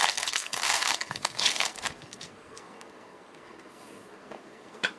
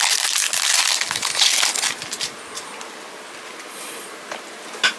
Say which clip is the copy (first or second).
first